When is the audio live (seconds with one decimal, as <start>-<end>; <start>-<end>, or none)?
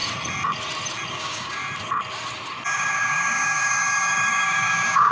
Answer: 0.0-1.1; 1.6-2.7